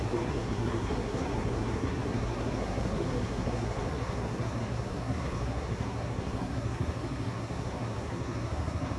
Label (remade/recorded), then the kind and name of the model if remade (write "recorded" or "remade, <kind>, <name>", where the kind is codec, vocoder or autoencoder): remade, codec, SNAC